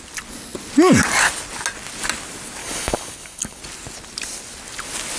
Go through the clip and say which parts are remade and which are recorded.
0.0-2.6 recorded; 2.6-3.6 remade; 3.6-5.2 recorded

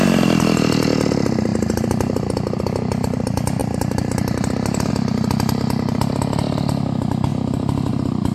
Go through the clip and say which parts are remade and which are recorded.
0.0-3.6 recorded; 3.6-4.9 remade; 4.9-8.3 recorded

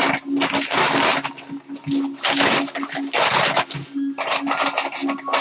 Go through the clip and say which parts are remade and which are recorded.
0.0-5.4 recorded

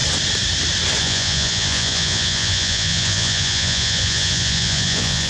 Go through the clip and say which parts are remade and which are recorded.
0.0-1.0 recorded; 1.0-5.3 remade

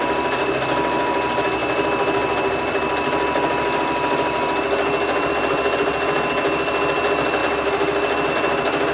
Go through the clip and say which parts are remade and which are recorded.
0.0-7.4 recorded; 7.4-8.3 remade; 8.3-8.9 recorded

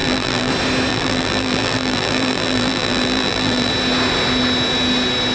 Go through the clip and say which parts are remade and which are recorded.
0.0-0.5 remade; 0.5-0.9 recorded; 0.9-3.7 remade; 3.7-5.3 recorded

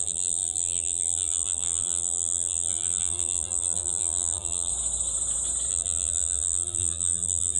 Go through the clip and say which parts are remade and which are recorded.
0.0-4.7 remade; 4.7-5.7 recorded; 5.7-7.6 remade

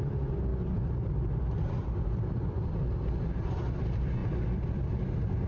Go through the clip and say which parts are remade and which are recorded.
0.0-0.5 recorded; 0.5-3.8 remade; 3.8-4.2 recorded; 4.2-4.8 remade; 4.8-5.5 recorded